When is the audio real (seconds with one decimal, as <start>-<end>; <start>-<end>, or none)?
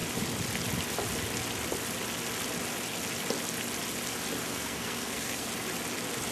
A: 0.0-4.4; 5.5-6.3